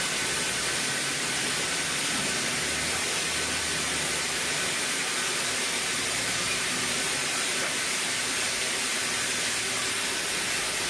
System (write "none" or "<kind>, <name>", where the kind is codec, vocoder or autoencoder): vocoder, BigVGAN v2